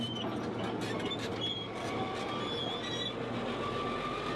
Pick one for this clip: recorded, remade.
recorded